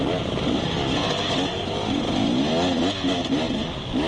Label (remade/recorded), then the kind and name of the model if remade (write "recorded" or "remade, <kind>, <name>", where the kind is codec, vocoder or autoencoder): recorded